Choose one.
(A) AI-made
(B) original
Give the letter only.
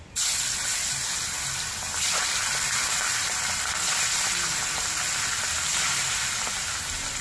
B